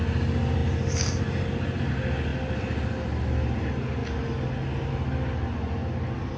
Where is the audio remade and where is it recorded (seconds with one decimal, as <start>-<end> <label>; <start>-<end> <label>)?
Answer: 0.0-6.4 recorded